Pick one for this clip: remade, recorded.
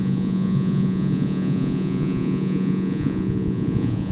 remade